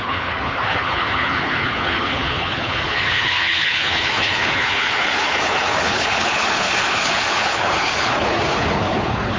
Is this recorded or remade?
remade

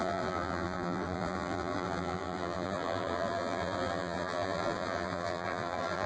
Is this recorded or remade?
remade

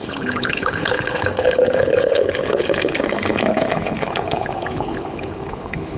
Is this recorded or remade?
remade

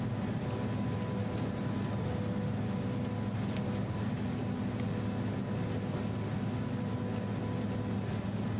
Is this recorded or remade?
recorded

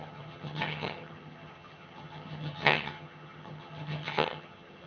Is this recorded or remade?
remade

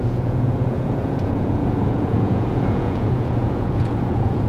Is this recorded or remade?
remade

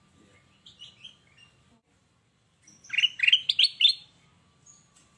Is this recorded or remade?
recorded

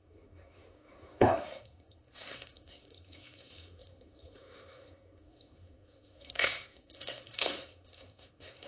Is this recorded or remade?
remade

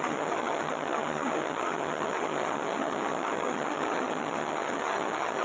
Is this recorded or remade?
remade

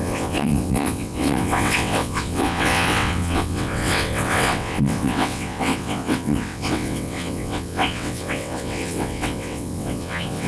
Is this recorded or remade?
remade